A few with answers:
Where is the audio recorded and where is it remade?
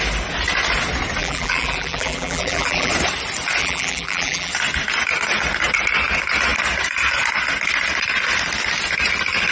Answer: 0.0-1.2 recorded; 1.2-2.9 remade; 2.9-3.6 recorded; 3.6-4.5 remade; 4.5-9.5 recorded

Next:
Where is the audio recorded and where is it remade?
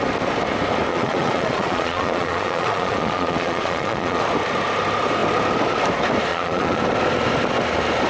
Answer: 0.0-0.9 recorded; 0.9-4.2 remade; 4.2-6.3 recorded; 6.3-6.8 remade; 6.8-8.1 recorded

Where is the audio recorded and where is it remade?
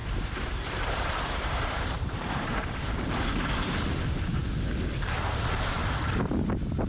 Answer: 0.0-3.1 remade; 3.1-6.9 recorded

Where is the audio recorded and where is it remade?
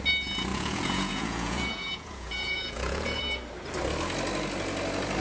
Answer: 0.0-0.5 recorded; 0.5-3.2 remade; 3.2-5.2 recorded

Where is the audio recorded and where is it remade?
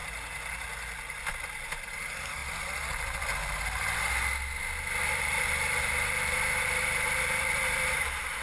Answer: 0.0-8.4 recorded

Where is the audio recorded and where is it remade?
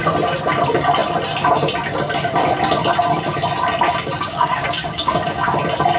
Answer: 0.0-4.3 recorded; 4.3-5.1 remade; 5.1-6.0 recorded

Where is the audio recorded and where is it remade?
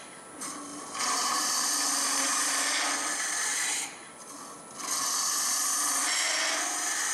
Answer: 0.0-0.7 recorded; 0.7-2.5 remade; 2.5-3.5 recorded; 3.5-4.1 remade; 4.1-7.1 recorded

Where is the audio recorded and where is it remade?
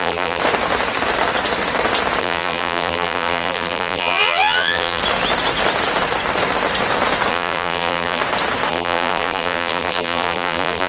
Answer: 0.0-0.4 remade; 0.4-2.2 recorded; 2.2-5.0 remade; 5.0-7.3 recorded; 7.3-8.2 remade; 8.2-8.7 recorded; 8.7-10.9 remade